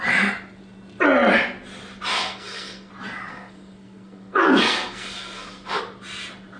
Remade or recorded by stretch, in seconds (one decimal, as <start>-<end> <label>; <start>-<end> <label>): 0.0-2.1 recorded; 2.1-2.9 remade; 2.9-3.3 recorded; 3.3-5.8 remade; 5.8-6.6 recorded

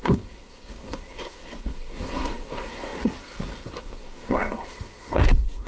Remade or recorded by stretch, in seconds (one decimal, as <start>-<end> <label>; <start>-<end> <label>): 0.0-5.7 remade

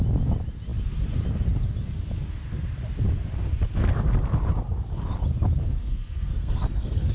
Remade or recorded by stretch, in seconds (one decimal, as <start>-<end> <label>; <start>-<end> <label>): 0.0-5.6 recorded; 5.6-7.1 remade